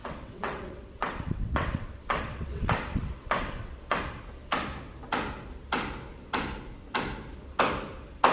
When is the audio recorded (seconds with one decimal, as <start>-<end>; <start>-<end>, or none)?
4.0-8.3